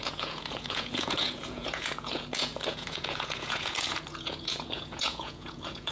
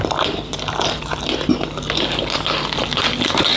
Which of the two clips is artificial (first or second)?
first